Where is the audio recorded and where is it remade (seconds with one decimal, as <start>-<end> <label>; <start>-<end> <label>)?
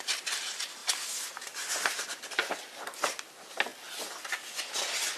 0.0-5.2 recorded